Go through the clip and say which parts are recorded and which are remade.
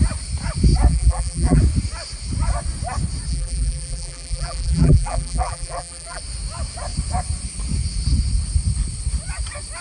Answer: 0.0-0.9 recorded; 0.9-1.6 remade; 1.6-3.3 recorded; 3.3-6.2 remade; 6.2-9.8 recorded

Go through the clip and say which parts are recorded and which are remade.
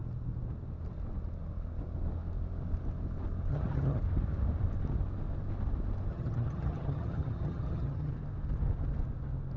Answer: 0.0-3.5 recorded; 3.5-4.0 remade; 4.0-6.1 recorded; 6.1-8.1 remade; 8.1-9.6 recorded